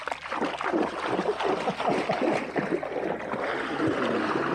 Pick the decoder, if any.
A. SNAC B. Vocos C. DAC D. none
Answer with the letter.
D